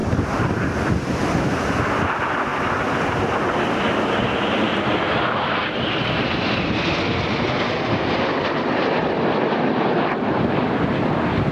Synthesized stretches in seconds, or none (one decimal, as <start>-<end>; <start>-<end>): none